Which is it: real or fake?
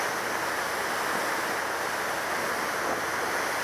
real